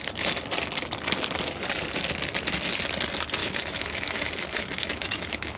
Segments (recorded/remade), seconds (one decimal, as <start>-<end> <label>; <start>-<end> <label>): 0.0-3.4 recorded; 3.4-5.6 remade